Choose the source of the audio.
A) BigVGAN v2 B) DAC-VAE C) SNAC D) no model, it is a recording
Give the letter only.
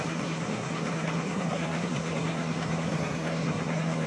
C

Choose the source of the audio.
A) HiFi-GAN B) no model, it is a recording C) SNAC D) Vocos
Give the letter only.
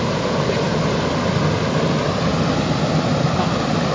B